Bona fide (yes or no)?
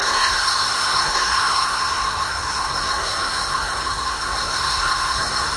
no